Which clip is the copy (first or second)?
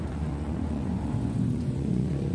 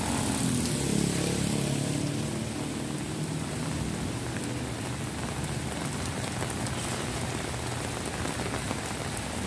first